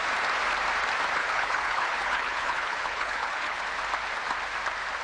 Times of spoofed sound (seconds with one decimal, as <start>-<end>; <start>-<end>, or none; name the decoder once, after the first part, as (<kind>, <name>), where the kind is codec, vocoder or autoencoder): 1.2-3.6 (codec, HILCodec)